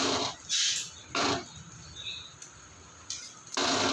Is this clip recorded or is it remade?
recorded